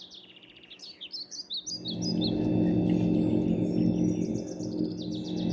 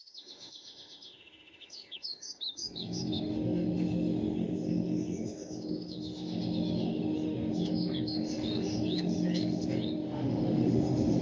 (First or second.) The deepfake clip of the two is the second